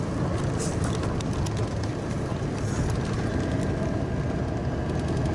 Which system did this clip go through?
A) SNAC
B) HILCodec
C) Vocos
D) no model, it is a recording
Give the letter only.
D